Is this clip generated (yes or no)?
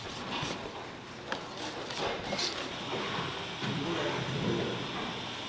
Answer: no